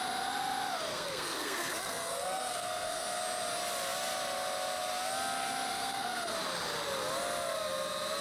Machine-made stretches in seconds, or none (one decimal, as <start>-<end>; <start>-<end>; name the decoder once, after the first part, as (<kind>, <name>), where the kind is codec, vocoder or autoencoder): 0.9-3.2 (codec, SNAC); 5.7-6.3

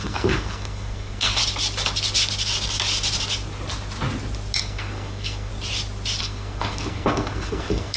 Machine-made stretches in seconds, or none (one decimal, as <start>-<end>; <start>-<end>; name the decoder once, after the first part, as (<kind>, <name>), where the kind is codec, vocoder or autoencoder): 0.0-1.4 (codec, SNAC); 4.6-5.5; 6.2-8.0

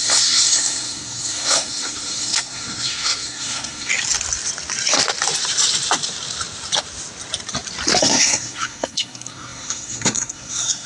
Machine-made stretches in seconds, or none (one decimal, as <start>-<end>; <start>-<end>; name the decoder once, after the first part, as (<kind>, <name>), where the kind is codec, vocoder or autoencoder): 0.0-3.9 (codec, SNAC); 8.0-10.9